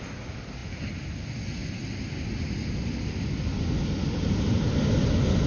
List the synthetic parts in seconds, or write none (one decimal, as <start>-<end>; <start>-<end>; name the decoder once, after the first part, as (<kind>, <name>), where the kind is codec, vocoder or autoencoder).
none